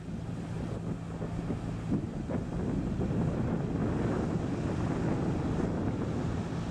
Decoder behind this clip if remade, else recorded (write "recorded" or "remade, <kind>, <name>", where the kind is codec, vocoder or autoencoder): recorded